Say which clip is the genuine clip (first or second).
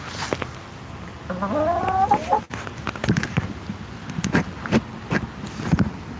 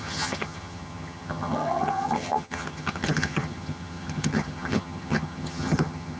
first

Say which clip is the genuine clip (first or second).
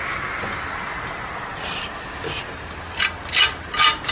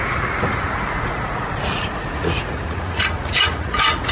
first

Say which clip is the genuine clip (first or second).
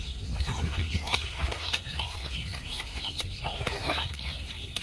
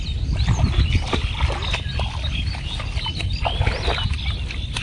second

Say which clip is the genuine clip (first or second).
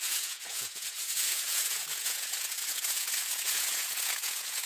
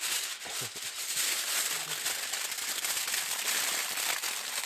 second